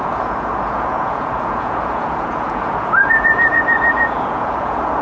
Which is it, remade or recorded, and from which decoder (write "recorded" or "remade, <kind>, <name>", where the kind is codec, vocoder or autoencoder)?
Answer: remade, vocoder, Vocos